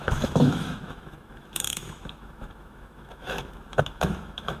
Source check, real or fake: fake